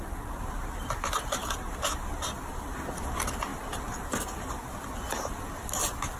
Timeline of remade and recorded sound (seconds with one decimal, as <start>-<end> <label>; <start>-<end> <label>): 0.0-6.2 recorded